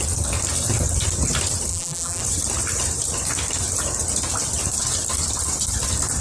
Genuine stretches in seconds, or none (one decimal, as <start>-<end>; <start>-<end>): 0.0-1.7; 2.2-6.2